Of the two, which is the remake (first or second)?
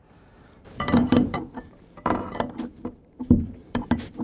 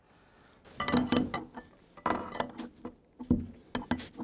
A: first